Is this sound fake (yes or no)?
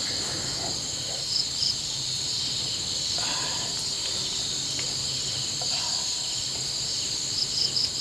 no